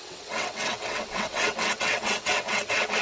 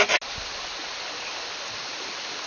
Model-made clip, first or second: first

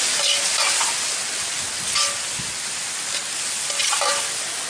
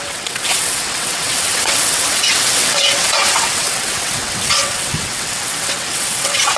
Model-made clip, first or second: second